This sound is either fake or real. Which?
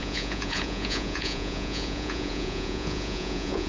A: fake